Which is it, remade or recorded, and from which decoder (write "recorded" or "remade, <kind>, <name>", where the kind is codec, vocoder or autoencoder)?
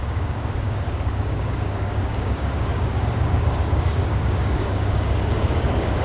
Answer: remade, codec, DAC